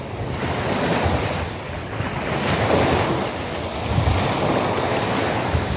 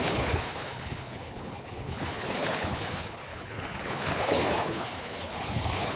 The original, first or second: first